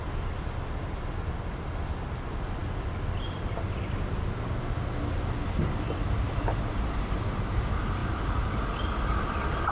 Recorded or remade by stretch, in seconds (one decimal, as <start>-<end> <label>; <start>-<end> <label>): 0.0-9.7 recorded